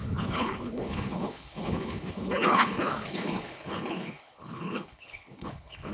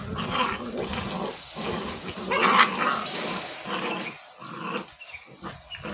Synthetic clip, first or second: first